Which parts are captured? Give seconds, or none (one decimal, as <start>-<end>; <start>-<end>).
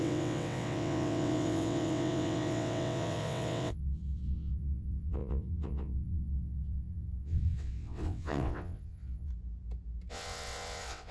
9.3-10.1